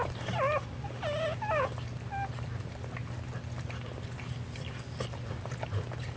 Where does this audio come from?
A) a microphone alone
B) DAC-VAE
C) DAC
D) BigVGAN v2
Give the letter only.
A